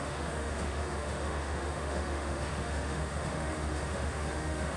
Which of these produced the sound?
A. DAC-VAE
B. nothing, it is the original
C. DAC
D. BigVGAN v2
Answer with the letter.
A